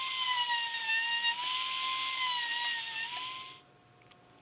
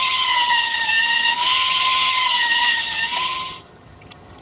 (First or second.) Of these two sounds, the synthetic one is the second